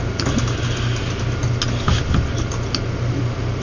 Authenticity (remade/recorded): recorded